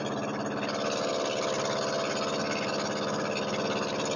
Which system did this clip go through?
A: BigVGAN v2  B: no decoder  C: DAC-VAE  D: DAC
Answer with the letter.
B